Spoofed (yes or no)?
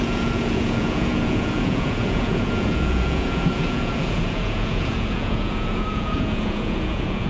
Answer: yes